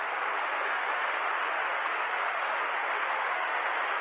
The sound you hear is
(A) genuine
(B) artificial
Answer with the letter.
B